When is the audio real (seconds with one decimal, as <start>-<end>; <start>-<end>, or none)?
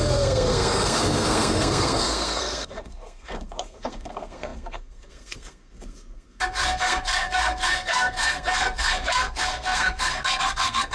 none